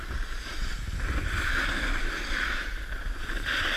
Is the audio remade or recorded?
recorded